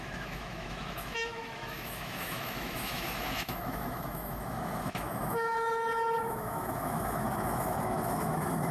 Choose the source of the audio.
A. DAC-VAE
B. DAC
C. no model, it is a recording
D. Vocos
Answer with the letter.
A